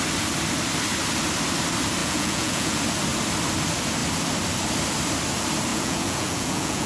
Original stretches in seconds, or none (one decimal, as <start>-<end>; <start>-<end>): 0.0-2.0; 2.8-5.7